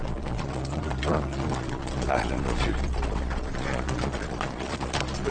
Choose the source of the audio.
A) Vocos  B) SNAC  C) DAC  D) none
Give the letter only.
A